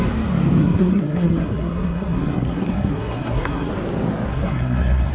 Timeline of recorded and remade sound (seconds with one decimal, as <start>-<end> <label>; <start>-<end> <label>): 0.0-0.6 recorded; 0.6-3.7 remade; 3.7-4.3 recorded; 4.3-5.1 remade